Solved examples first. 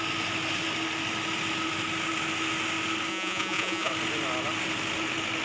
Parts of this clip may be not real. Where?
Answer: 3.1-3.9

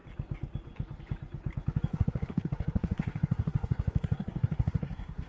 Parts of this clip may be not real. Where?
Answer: 1.9-5.3

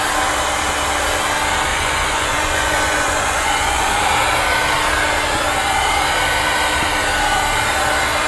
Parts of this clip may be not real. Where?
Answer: 1.7-3.9

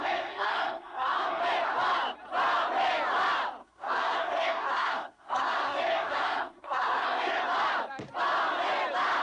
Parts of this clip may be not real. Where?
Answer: 0.0-1.4; 3.6-7.4

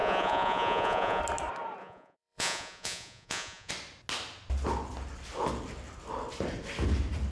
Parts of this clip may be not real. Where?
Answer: 0.0-1.2; 1.8-3.7

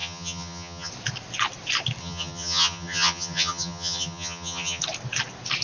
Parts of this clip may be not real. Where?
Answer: 0.0-0.9; 2.0-4.8